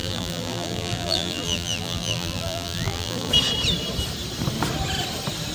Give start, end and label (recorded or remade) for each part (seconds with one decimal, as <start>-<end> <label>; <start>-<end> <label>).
0.0-3.3 remade; 3.3-5.5 recorded